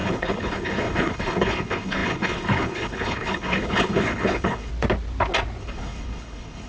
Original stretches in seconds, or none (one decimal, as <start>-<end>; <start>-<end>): 4.7-5.6